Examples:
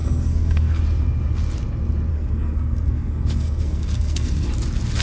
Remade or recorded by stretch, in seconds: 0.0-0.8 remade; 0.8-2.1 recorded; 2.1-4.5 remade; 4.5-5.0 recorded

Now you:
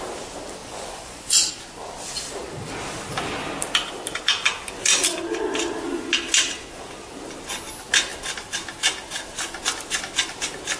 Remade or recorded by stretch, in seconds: 0.0-0.6 recorded; 0.6-1.5 remade; 1.5-10.8 recorded

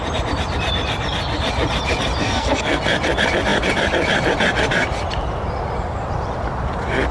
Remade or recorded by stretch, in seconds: 0.0-2.2 recorded; 2.2-2.8 remade; 2.8-7.1 recorded

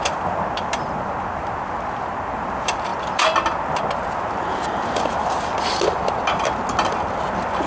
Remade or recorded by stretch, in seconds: 0.0-7.7 recorded